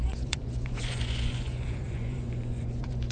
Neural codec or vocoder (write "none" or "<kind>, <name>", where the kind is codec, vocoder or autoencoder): vocoder, Vocos